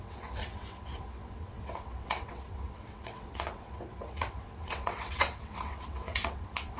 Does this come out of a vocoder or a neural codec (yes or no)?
yes